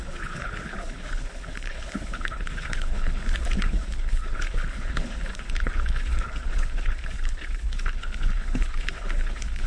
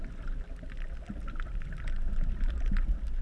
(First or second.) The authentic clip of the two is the second